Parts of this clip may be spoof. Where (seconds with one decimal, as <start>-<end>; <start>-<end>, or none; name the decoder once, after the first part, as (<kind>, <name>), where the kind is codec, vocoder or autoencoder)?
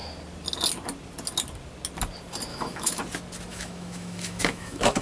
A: 2.5-3.0 (autoencoder, DAC-VAE); 3.5-5.0